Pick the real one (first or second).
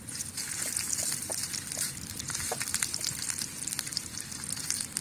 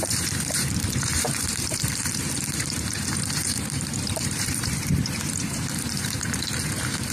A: first